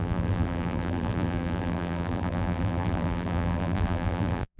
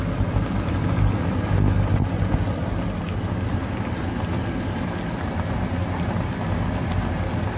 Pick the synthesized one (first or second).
first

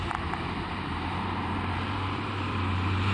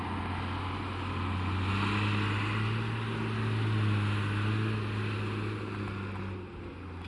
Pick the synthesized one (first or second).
first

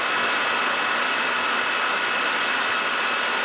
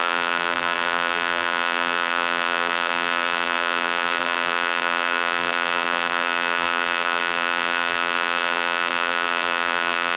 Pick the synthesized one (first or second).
second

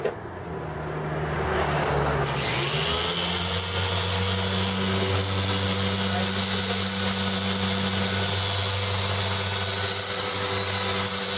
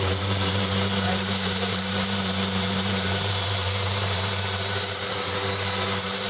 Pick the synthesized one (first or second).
second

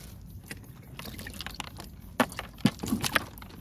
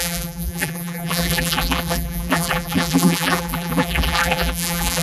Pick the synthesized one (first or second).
second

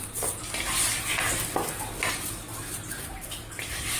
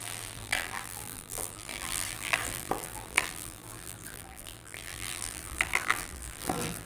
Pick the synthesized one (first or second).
second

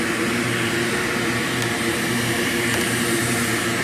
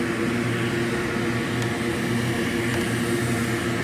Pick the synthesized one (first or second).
first